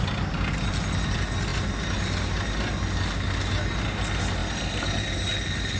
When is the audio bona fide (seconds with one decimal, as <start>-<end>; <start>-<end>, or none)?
0.0-5.8